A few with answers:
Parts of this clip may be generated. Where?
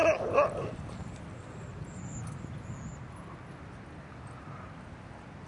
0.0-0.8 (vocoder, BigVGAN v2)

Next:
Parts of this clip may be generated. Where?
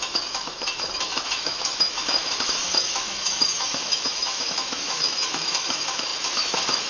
0.0-6.9 (autoencoder, DAC-VAE)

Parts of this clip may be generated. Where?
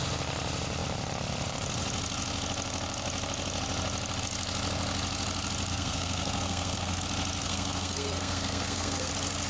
5.7-7.0 (codec, SNAC); 7.4-9.1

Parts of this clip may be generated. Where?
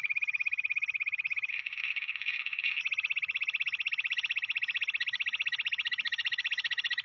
1.5-2.8 (codec, ZipCodec)